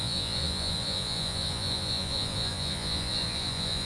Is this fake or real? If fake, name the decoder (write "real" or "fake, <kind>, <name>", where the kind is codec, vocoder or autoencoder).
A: fake, vocoder, Vocos